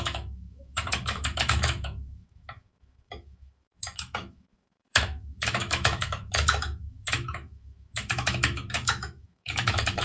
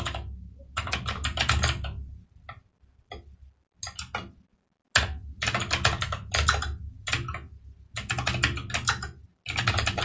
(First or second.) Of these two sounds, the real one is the second